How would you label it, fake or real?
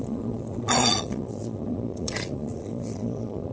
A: fake